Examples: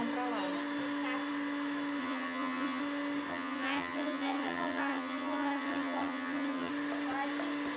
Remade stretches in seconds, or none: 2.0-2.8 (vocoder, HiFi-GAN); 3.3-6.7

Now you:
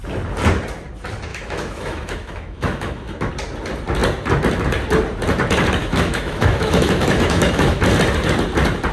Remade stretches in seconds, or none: 1.3-3.3 (autoencoder, DAC-VAE); 5.8-7.8

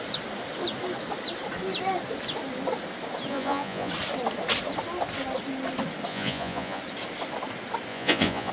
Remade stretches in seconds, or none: 3.3-3.9 (vocoder, Vocos); 6.1-6.8; 7.9-8.5

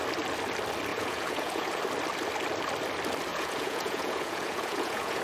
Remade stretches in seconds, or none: 0.9-1.8 (vocoder, Vocos); 3.3-5.2

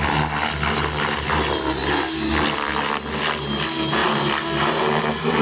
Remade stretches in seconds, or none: none

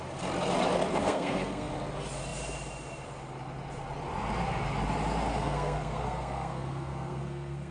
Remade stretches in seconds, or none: 1.0-1.7 (codec, SNAC); 5.3-7.7